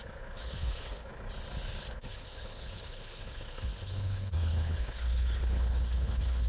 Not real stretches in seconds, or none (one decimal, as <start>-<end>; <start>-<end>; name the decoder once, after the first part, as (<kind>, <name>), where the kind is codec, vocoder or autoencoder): 0.0-1.1 (codec, HILCodec); 1.9-6.5